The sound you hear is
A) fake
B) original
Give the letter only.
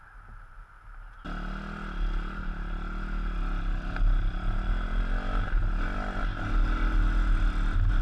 B